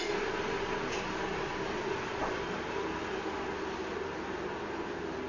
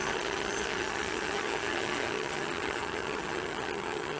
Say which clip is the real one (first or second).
first